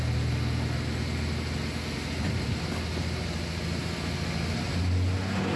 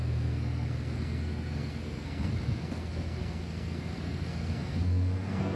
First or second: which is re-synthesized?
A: second